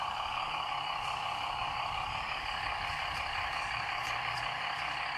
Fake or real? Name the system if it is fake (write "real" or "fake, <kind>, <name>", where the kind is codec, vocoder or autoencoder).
fake, codec, DAC